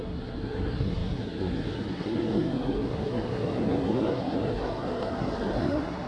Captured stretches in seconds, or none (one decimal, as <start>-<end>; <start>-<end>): none